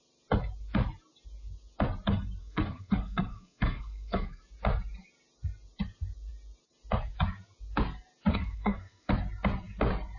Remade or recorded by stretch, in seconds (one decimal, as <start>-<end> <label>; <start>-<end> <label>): 0.0-2.4 recorded; 2.4-4.4 remade; 4.4-8.3 recorded; 8.3-9.1 remade; 9.1-10.2 recorded